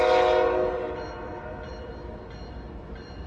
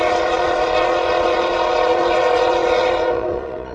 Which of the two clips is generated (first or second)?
second